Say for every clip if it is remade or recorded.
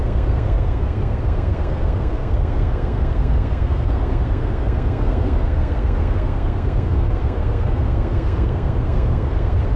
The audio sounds remade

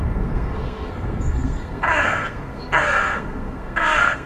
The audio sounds remade